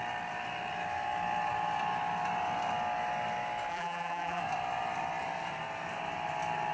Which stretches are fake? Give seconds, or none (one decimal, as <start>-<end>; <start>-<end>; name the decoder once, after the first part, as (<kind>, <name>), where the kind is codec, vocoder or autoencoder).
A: 3.7-4.4 (vocoder, BigVGAN v2)